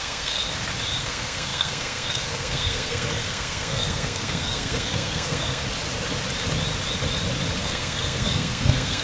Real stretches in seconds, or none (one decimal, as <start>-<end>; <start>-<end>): 0.4-1.0; 5.6-7.6